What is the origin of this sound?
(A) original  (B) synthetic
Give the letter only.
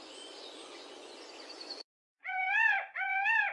B